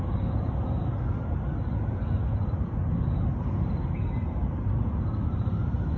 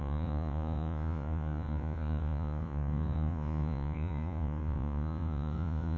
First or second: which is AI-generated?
second